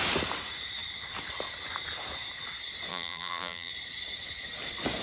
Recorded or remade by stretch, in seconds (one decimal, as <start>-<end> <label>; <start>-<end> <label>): 0.0-2.9 recorded; 2.9-3.7 remade; 3.7-5.0 recorded